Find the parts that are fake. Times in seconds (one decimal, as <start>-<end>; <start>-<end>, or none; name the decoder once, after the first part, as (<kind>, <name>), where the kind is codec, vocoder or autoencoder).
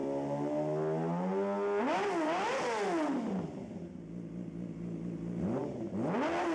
none